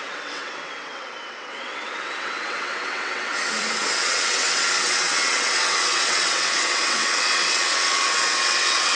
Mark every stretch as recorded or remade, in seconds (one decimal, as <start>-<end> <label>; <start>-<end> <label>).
0.0-8.9 remade